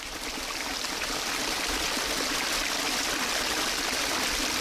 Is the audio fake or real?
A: real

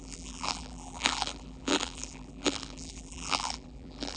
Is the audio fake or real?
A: fake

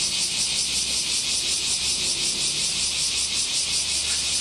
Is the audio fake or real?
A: real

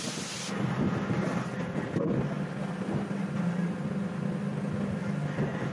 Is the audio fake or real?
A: real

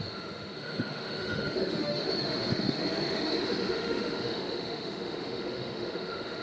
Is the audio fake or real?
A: fake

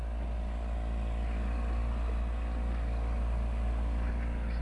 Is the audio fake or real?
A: real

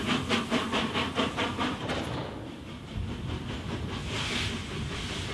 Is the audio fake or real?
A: real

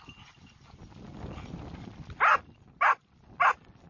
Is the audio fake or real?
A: real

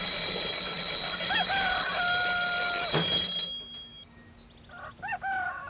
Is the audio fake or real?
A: real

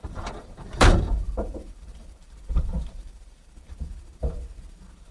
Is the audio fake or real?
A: fake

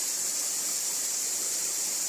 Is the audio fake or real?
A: fake